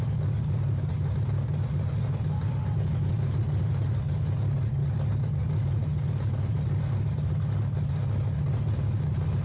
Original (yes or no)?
yes